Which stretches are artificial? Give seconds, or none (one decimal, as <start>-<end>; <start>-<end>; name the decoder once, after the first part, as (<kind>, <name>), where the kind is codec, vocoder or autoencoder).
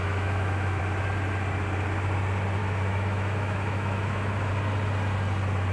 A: 0.0-0.8 (autoencoder, DAC-VAE); 2.6-4.5